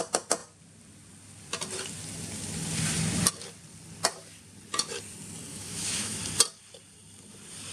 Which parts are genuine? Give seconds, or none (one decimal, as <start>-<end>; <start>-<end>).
0.0-5.5; 6.2-7.7